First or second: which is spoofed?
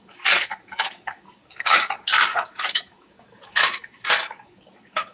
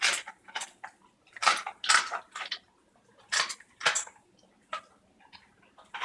first